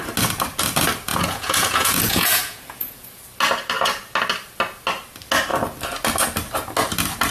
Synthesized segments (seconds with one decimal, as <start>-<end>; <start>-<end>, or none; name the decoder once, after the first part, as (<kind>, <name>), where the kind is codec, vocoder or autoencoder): 1.1-3.2 (vocoder, Vocos)